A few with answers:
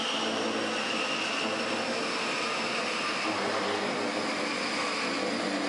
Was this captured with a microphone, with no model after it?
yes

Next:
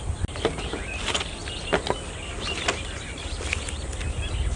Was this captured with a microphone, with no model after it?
yes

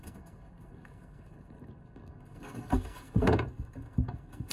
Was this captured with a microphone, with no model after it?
no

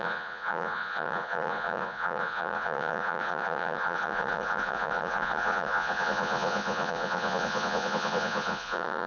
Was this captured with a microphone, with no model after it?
no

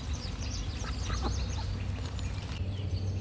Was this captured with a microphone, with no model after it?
yes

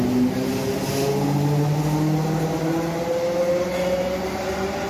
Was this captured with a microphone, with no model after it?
yes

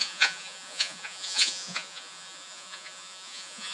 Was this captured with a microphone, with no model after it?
no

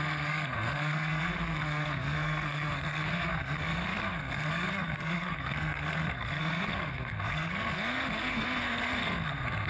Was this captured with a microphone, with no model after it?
no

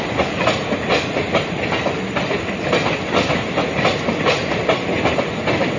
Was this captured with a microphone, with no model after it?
yes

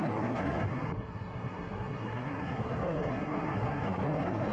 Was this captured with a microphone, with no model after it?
no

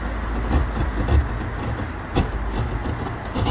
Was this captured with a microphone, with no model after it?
yes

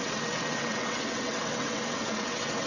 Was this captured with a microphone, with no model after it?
no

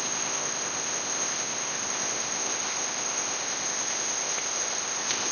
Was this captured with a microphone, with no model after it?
no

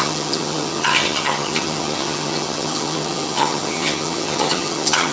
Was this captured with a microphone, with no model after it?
no